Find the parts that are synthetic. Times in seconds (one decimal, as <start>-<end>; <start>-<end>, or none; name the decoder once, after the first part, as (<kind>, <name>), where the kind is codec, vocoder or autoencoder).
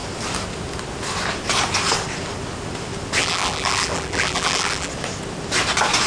3.2-4.9 (vocoder, BigVGAN v2)